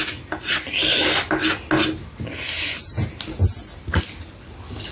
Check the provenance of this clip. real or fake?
real